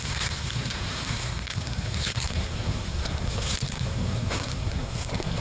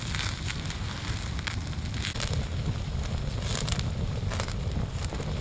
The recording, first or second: second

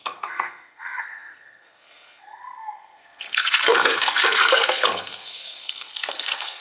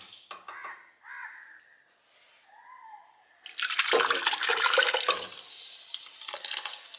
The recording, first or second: second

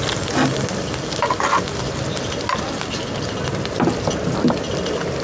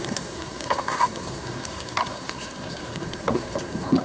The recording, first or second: first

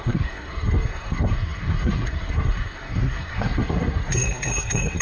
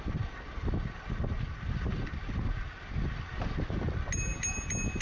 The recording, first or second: second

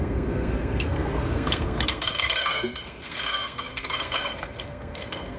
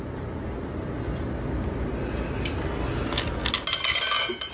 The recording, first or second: second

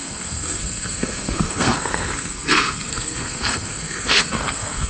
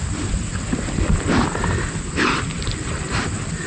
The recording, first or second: second